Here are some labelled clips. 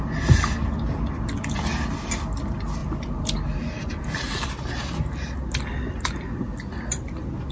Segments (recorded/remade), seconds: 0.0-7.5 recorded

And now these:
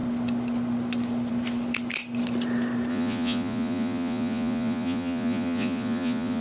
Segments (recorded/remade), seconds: 0.0-2.9 recorded; 2.9-6.4 remade

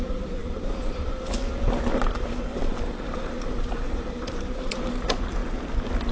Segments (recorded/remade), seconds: 0.0-0.4 recorded; 0.4-1.1 remade; 1.1-2.5 recorded; 2.5-4.7 remade; 4.7-6.1 recorded

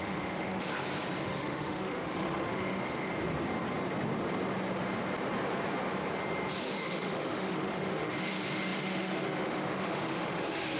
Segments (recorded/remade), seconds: 0.0-0.7 remade; 0.7-1.2 recorded; 1.2-3.1 remade; 3.1-6.6 recorded; 6.6-10.8 remade